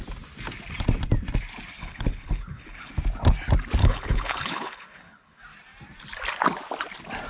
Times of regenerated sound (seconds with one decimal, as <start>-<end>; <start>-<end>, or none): 1.8-2.9; 3.8-5.4